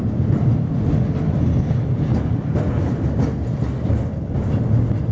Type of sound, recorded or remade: recorded